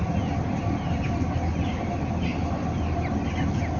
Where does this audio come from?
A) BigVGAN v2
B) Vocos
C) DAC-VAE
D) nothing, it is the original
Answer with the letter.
D